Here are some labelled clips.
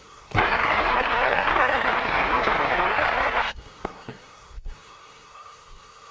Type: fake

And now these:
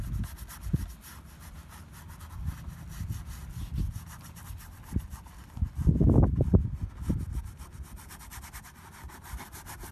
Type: real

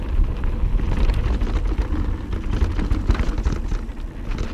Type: real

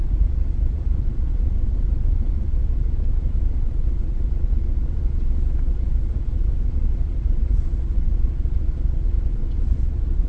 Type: fake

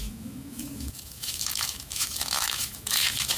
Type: fake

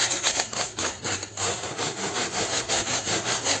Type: fake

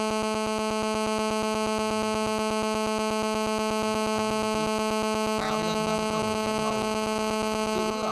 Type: fake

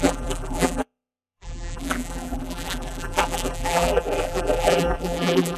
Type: fake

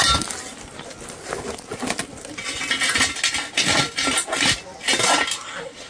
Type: real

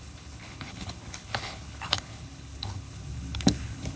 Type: fake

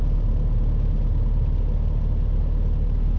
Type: real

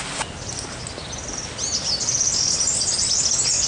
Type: real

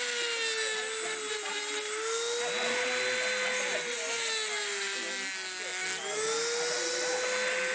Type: real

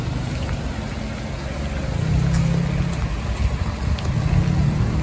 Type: real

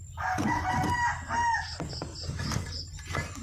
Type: real